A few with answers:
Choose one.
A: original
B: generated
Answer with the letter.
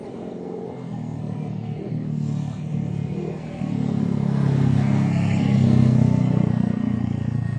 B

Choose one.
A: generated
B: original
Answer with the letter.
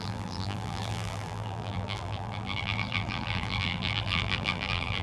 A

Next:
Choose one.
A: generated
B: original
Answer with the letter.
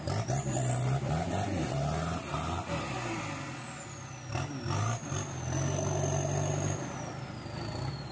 B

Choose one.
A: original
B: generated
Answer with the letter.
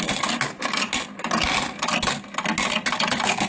A